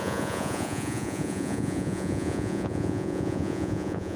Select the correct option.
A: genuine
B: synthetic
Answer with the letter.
B